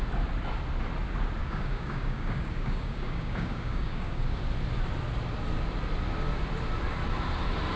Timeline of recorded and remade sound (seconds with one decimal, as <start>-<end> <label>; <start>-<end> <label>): 0.0-1.4 recorded; 1.4-4.4 remade; 4.4-7.8 recorded